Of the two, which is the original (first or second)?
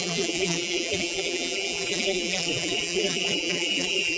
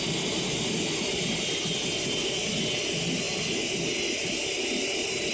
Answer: second